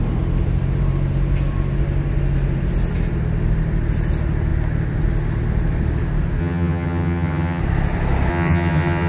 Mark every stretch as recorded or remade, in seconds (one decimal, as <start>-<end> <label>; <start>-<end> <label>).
0.0-6.4 recorded; 6.4-7.6 remade; 7.6-8.3 recorded; 8.3-9.1 remade